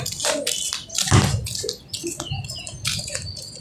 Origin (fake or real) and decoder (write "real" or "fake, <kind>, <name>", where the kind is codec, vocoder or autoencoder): real